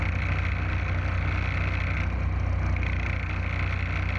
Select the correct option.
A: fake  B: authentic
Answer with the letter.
B